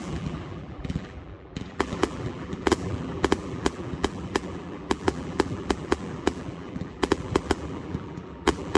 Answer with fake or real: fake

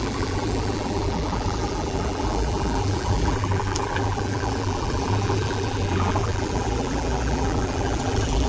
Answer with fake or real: fake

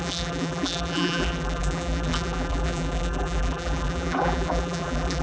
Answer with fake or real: fake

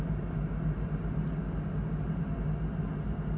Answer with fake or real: real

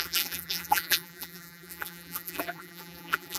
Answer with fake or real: fake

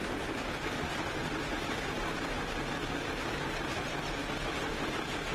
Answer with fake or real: real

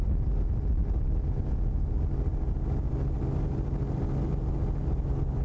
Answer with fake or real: real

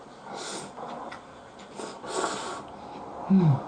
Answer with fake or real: real